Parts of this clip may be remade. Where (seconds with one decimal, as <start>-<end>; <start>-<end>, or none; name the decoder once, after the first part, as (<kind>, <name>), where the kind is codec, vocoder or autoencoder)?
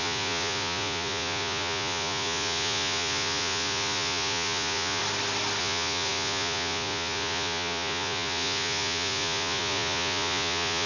0.0-5.0 (vocoder, Vocos); 5.6-10.9